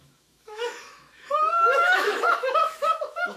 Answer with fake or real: fake